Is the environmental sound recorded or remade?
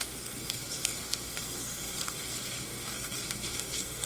remade